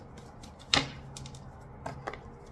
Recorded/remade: recorded